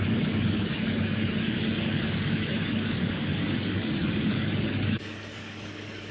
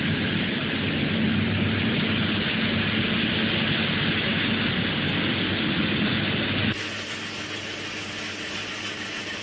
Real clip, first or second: second